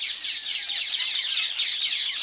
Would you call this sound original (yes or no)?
yes